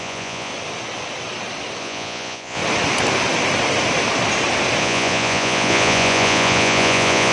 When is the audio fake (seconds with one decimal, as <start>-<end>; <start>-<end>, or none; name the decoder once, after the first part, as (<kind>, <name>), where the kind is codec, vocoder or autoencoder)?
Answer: 0.0-0.5 (vocoder, Vocos); 1.8-2.6; 4.8-7.3